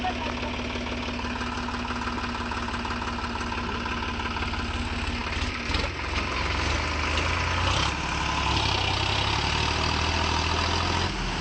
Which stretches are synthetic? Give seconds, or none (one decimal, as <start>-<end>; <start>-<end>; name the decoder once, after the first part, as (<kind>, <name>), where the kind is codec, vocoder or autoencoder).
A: none